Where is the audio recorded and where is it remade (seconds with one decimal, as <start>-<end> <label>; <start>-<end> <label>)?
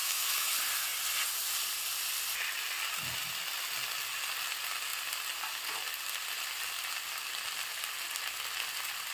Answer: 0.0-0.5 remade; 0.5-9.1 recorded